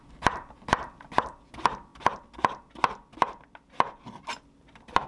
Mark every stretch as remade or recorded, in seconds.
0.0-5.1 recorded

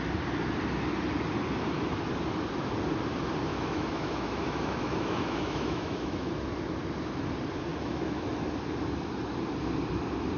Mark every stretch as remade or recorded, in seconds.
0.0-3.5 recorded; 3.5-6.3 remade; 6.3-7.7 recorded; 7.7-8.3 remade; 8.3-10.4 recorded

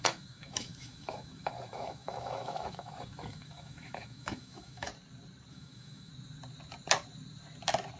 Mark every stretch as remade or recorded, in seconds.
0.0-4.9 remade; 4.9-5.5 recorded; 5.5-6.1 remade; 6.1-8.0 recorded

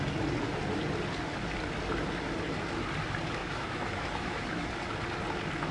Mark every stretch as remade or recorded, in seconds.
0.0-3.4 recorded; 3.4-4.7 remade; 4.7-5.7 recorded